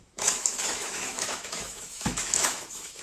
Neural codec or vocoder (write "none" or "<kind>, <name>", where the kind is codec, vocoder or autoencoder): autoencoder, DAC-VAE